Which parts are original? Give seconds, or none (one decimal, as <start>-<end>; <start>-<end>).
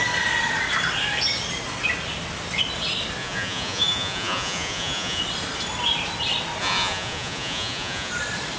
0.0-3.2; 5.2-6.6; 8.1-8.6